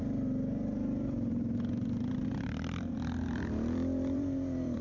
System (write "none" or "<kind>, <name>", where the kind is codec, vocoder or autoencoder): vocoder, BigVGAN v2